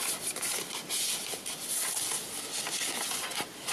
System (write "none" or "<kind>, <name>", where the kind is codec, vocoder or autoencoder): none